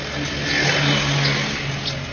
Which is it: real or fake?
real